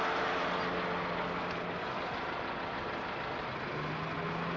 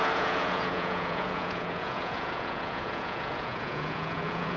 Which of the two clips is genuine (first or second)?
first